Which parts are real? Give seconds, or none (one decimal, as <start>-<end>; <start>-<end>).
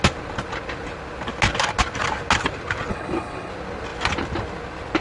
0.0-2.9; 3.5-5.0